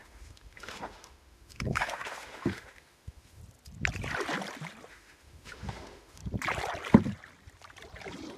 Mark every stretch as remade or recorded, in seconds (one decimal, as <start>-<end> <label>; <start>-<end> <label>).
0.0-3.4 remade; 3.4-4.9 recorded; 4.9-6.2 remade; 6.2-8.4 recorded